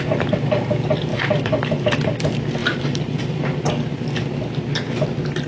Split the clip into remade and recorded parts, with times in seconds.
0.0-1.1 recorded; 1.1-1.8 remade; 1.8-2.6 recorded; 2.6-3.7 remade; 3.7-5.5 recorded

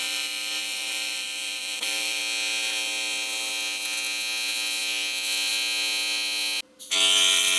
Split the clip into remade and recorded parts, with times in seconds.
0.0-2.2 remade; 2.2-7.6 recorded

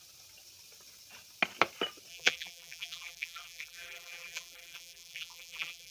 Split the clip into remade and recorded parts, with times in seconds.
0.0-2.1 recorded; 2.1-5.9 remade

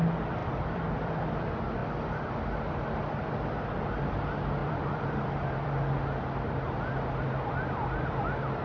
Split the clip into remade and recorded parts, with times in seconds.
0.0-0.4 recorded; 0.4-1.4 remade; 1.4-4.6 recorded; 4.6-5.7 remade; 5.7-8.6 recorded

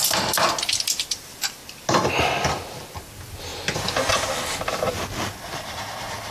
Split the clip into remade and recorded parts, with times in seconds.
0.0-1.6 remade; 1.6-2.5 recorded; 2.5-3.5 remade; 3.5-4.2 recorded; 4.2-6.3 remade